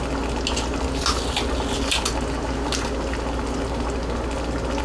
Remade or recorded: recorded